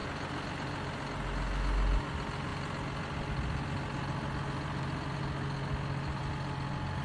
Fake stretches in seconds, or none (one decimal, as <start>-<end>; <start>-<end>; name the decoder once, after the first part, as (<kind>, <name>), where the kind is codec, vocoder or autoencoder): none